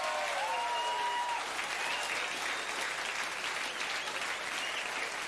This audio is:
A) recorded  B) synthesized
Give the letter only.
A